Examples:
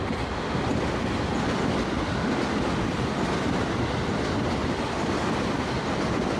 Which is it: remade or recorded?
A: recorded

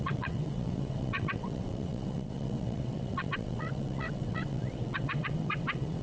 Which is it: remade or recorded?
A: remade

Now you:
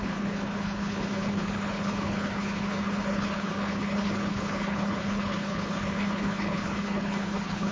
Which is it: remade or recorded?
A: remade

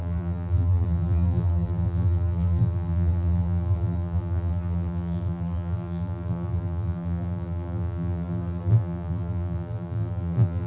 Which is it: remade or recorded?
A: remade